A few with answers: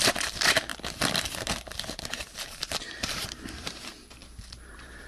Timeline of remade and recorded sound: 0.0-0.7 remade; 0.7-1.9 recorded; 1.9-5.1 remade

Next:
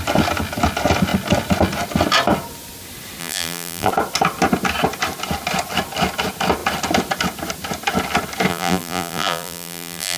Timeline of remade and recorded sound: 0.0-3.2 recorded; 3.2-3.9 remade; 3.9-8.5 recorded; 8.5-10.2 remade

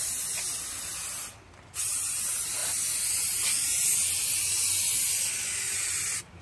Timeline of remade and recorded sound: 0.0-6.4 recorded

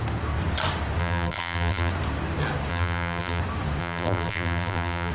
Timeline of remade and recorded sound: 0.0-1.0 recorded; 1.0-1.9 remade; 1.9-2.7 recorded; 2.7-3.4 remade; 3.4-3.8 recorded; 3.8-5.1 remade

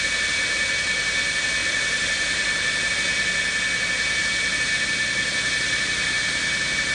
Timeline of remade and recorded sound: 0.0-1.6 recorded; 1.6-2.9 remade; 2.9-6.9 recorded